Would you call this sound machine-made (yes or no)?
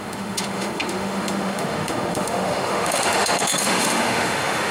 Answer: yes